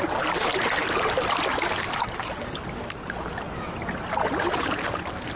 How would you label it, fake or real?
real